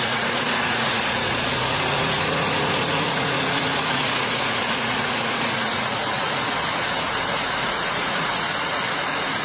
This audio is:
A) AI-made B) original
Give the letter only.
A